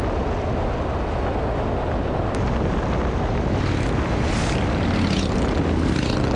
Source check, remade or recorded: recorded